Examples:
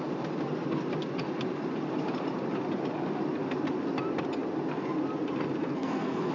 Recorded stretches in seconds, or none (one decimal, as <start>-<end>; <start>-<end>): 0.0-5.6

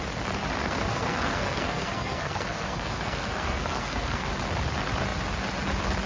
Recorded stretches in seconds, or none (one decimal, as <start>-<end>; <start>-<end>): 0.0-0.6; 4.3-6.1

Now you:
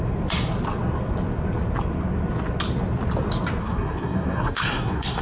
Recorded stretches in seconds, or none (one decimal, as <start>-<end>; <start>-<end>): 0.0-3.6

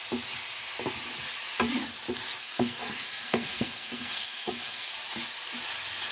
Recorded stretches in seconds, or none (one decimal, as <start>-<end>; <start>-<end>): 0.0-2.4; 4.9-6.1